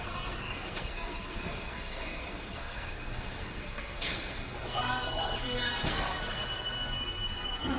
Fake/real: fake